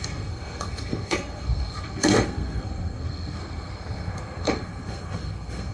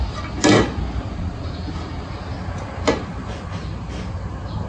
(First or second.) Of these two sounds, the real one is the second